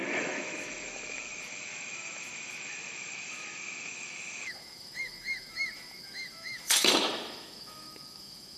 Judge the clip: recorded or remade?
remade